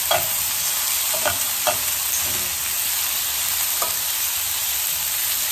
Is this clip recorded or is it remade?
recorded